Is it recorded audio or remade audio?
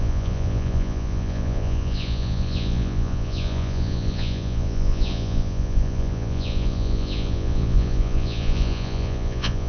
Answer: remade